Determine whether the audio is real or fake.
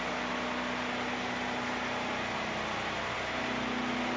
real